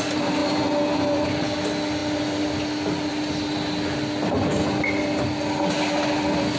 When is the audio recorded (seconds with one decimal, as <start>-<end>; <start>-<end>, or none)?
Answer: 0.0-6.6